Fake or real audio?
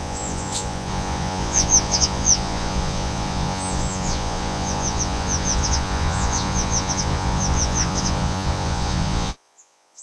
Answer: fake